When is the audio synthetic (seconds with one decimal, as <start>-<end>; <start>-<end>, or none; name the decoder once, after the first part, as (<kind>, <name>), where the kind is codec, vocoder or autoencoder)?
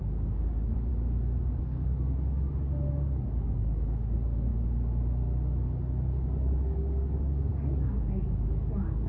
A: 0.0-0.9 (codec, DAC); 1.6-4.5; 6.1-9.1